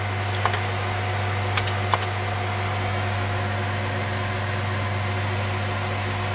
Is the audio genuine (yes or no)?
yes